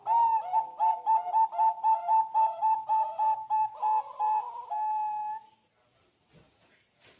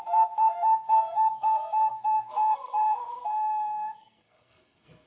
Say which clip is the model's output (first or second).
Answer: second